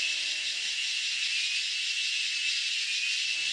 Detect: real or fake real